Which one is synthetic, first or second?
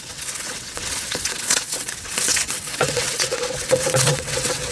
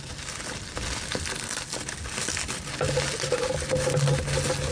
first